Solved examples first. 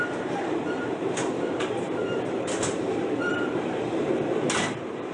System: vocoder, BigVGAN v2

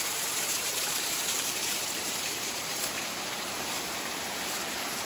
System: vocoder, BigVGAN v2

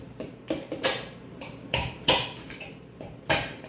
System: vocoder, BigVGAN v2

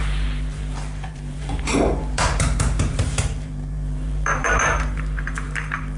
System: vocoder, BigVGAN v2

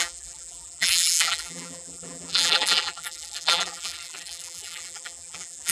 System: vocoder, BigVGAN v2